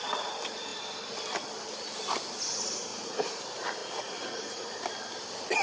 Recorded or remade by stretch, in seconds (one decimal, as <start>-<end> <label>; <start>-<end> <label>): 0.0-2.9 recorded; 2.9-3.4 remade; 3.4-3.8 recorded; 3.8-4.8 remade; 4.8-5.6 recorded